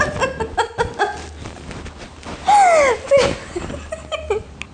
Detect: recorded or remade recorded